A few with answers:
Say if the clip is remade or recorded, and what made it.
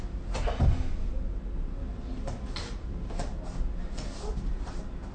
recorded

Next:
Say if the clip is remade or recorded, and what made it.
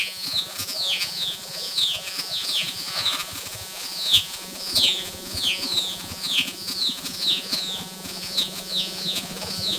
remade, vocoder, Vocos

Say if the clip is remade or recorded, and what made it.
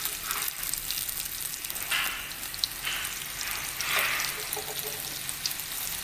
recorded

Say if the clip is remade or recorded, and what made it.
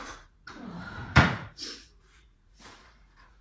remade, vocoder, Vocos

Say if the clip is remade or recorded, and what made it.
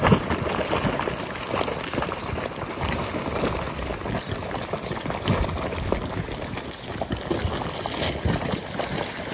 recorded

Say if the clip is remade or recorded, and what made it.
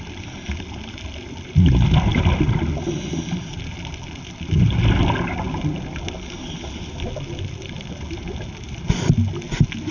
recorded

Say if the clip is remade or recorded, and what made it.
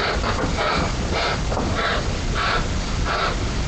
recorded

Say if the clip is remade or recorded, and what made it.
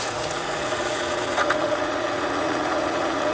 remade, vocoder, Vocos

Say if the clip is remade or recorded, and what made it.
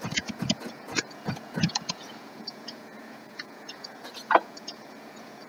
remade, vocoder, Vocos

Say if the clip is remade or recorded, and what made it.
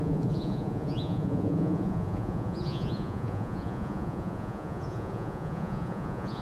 remade, vocoder, Vocos